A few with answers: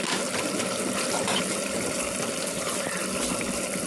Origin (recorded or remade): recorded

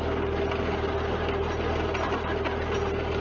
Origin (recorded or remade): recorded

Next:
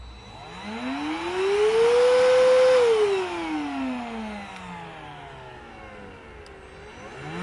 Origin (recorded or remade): recorded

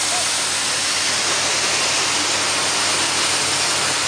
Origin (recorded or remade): recorded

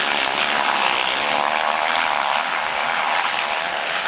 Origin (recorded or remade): recorded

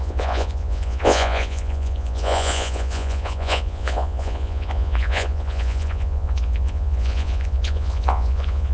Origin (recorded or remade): remade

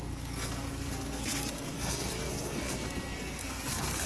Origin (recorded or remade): remade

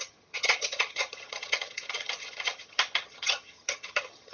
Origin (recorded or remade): remade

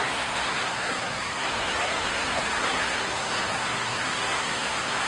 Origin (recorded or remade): remade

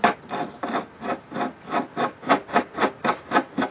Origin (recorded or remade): recorded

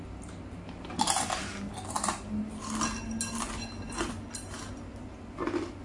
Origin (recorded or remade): recorded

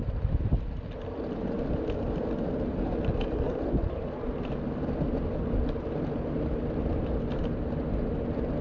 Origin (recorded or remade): recorded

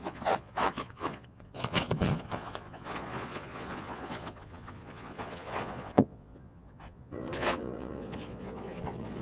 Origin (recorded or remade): remade